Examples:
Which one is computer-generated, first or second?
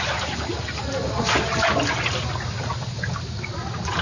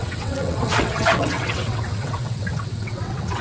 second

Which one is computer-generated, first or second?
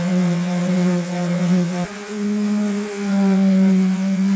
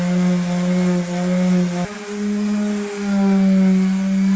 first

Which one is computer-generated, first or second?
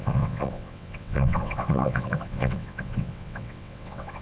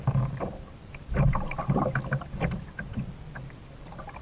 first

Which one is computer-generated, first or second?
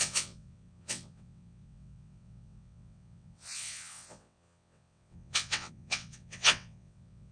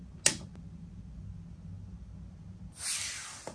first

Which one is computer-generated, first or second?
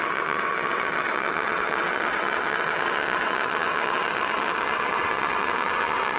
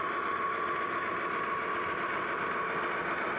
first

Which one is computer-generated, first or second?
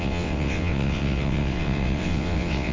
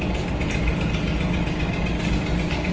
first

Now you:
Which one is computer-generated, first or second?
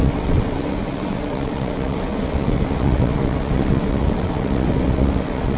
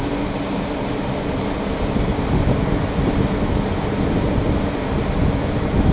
first